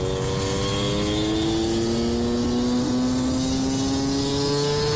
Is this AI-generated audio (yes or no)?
no